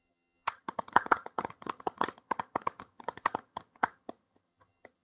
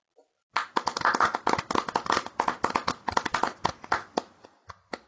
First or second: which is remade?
first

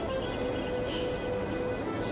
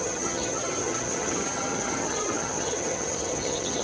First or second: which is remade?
second